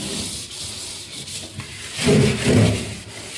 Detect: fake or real real